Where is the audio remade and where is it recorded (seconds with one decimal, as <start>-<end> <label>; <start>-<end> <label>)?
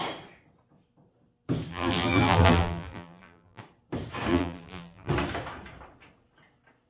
0.0-1.7 recorded; 1.7-3.6 remade; 3.6-4.3 recorded; 4.3-5.1 remade; 5.1-6.9 recorded